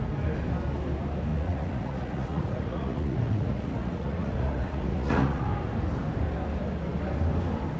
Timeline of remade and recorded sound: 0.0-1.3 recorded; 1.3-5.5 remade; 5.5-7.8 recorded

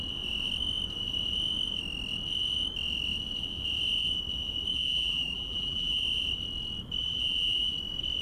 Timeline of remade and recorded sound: 0.0-4.7 recorded; 4.7-6.0 remade; 6.0-7.0 recorded; 7.0-7.7 remade; 7.7-8.2 recorded

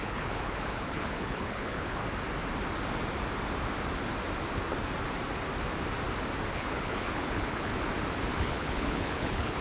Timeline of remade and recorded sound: 0.0-2.0 remade; 2.0-6.5 recorded; 6.5-7.7 remade; 7.7-8.4 recorded; 8.4-9.6 remade

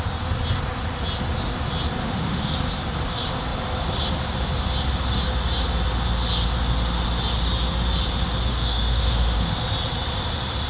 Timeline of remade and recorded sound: 0.0-2.0 recorded; 2.0-2.6 remade; 2.6-8.5 recorded; 8.5-9.5 remade; 9.5-10.7 recorded

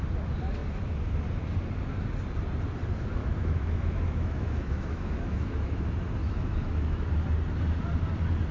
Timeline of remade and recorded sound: 0.0-3.2 recorded; 3.2-5.8 remade; 5.8-6.2 recorded; 6.2-7.1 remade; 7.1-8.5 recorded

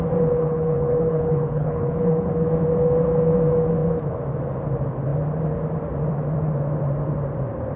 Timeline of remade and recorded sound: 0.0-0.4 recorded; 0.4-2.3 remade; 2.3-7.8 recorded

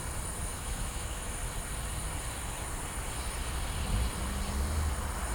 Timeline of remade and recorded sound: 0.0-0.5 recorded; 0.5-1.4 remade; 1.4-5.3 recorded

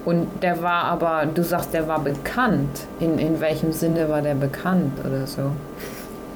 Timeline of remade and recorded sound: 0.0-2.1 recorded; 2.1-2.9 remade; 2.9-3.9 recorded; 3.9-4.5 remade; 4.5-5.2 recorded; 5.2-6.0 remade; 6.0-6.4 recorded